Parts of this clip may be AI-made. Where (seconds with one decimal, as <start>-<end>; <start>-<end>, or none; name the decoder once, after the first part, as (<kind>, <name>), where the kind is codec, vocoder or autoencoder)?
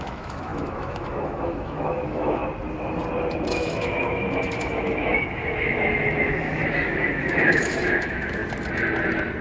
0.0-2.4 (autoencoder, DAC-VAE); 3.5-8.4